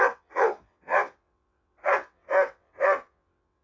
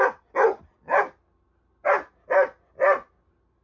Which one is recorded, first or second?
second